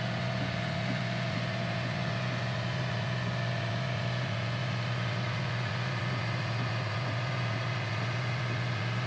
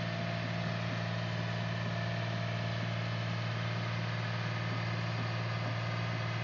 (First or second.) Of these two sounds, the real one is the second